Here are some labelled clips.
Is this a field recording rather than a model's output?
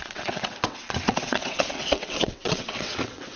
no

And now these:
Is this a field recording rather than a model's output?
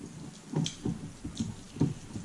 yes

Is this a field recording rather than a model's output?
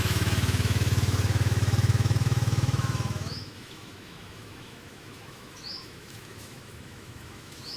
no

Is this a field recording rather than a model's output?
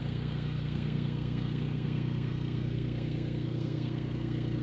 no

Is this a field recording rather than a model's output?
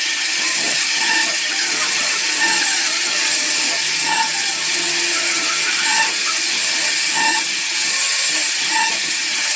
no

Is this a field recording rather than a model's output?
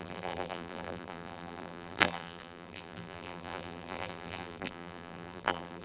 no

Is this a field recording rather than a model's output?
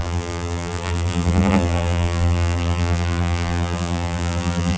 no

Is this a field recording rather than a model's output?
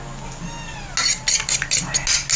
yes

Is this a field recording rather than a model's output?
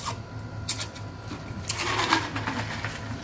yes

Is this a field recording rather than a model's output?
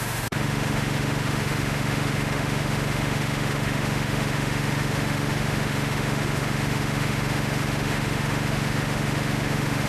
no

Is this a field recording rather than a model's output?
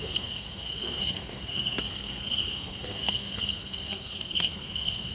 no